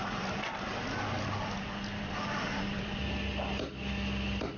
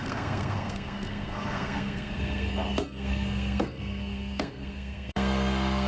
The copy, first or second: second